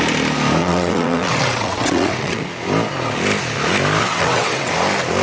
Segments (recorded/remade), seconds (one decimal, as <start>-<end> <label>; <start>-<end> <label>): 0.0-0.6 recorded; 0.6-2.4 remade; 2.4-4.0 recorded; 4.0-4.7 remade; 4.7-5.2 recorded